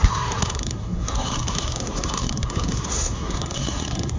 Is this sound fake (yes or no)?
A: yes